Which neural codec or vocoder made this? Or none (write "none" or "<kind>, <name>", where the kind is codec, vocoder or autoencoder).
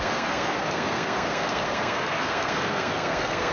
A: codec, SNAC